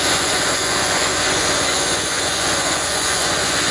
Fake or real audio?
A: fake